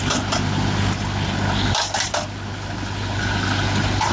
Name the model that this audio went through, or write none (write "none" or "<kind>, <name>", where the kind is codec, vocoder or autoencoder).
none